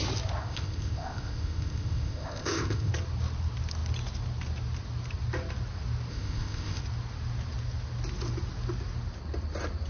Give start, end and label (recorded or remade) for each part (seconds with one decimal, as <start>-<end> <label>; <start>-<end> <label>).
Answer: 0.0-0.4 recorded; 0.4-2.9 remade; 2.9-6.1 recorded; 6.1-6.8 remade; 6.8-9.9 recorded